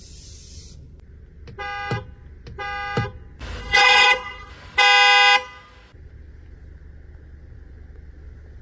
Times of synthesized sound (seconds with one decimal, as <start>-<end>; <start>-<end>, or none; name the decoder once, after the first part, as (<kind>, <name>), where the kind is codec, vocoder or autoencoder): 3.6-4.5 (codec, HILCodec)